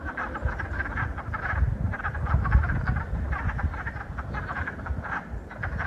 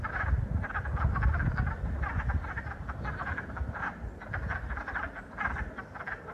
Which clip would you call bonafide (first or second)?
second